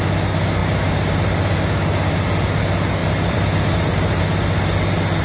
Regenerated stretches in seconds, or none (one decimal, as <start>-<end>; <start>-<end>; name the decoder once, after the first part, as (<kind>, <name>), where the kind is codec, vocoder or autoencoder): 3.0-4.2 (vocoder, BigVGAN v2)